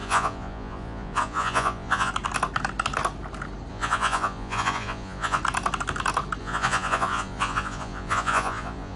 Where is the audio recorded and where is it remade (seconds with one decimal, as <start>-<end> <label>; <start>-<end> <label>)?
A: 0.0-2.1 remade; 2.1-3.7 recorded; 3.7-5.4 remade; 5.4-6.4 recorded; 6.4-9.0 remade